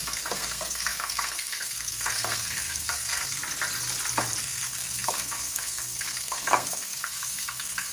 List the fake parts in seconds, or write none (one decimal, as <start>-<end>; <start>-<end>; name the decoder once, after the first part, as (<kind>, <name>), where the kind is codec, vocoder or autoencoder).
0.0-3.4 (codec, SNAC); 4.4-7.9

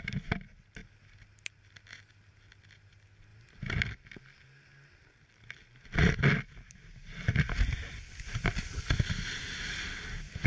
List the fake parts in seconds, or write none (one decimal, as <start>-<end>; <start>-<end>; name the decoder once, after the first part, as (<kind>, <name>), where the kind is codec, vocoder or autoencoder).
none

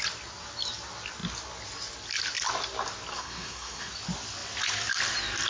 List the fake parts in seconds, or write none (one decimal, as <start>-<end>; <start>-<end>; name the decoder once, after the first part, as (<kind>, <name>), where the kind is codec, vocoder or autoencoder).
3.1-3.9 (codec, SNAC)

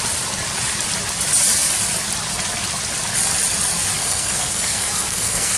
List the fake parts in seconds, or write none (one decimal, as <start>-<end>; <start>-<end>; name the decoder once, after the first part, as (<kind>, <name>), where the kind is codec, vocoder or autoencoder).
4.0-5.6 (codec, SNAC)